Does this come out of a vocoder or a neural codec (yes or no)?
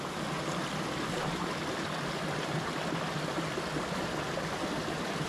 no